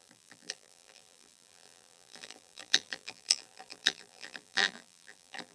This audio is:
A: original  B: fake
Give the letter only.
B